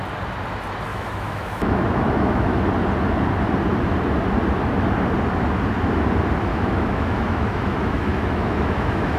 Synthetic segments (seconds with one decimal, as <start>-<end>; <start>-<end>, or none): 0.9-2.6; 6.5-9.2